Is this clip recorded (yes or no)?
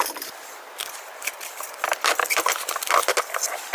yes